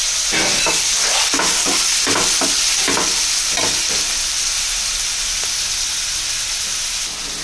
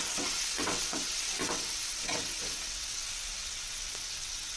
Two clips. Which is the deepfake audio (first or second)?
second